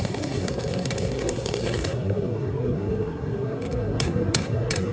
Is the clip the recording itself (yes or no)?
no